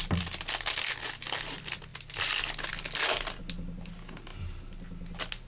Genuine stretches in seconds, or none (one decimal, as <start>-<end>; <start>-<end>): 0.0-5.5